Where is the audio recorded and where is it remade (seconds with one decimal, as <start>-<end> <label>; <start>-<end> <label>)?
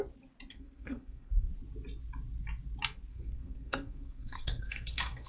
0.0-0.5 recorded; 0.5-1.5 remade; 1.5-3.1 recorded; 3.1-5.3 remade